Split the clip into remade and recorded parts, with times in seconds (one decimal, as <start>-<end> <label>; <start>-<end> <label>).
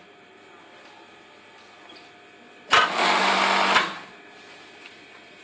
0.0-5.4 recorded